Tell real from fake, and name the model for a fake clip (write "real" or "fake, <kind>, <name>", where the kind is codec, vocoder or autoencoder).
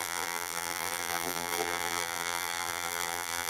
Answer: fake, vocoder, BigVGAN v2